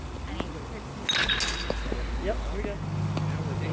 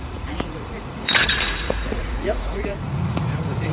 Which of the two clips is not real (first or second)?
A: second